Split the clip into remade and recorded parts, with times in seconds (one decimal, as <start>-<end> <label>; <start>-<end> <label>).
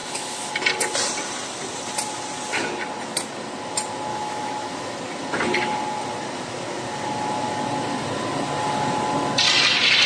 0.0-0.5 remade; 0.5-4.1 recorded; 4.1-5.0 remade; 5.0-10.1 recorded